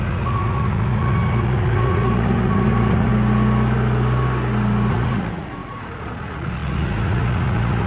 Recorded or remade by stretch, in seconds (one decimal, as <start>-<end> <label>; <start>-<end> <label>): 0.0-3.1 remade; 3.1-4.9 recorded; 4.9-7.9 remade